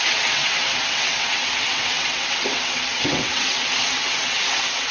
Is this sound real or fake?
fake